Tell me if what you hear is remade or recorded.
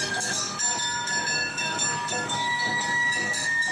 remade